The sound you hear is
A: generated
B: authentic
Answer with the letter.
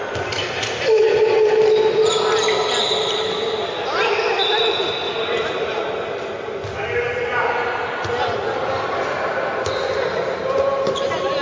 B